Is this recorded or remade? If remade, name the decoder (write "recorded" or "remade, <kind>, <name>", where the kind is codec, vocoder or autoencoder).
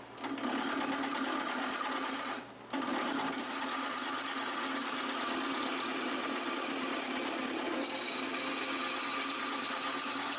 recorded